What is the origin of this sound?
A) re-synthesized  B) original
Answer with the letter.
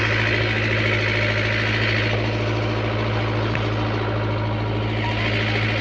B